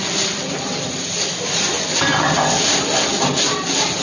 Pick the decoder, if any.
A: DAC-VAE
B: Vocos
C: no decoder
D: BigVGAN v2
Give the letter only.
D